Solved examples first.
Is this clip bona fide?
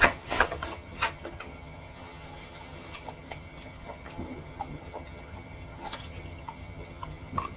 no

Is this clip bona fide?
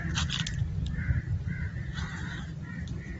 yes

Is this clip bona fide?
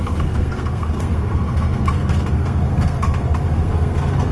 no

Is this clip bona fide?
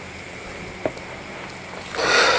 yes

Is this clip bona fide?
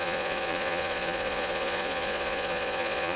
no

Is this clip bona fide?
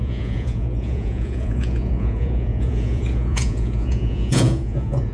no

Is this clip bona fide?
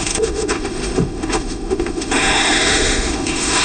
no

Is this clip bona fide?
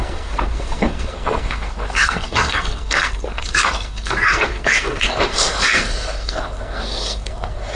no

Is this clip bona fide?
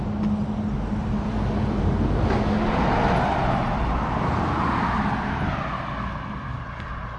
yes